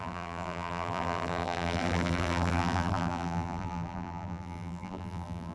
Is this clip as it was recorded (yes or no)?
no